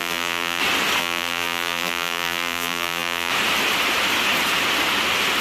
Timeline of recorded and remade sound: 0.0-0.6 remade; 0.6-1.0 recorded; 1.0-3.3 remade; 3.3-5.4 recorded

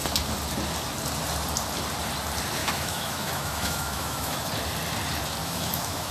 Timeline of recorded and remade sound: 0.0-2.6 recorded; 2.6-4.5 remade; 4.5-5.4 recorded; 5.4-6.1 remade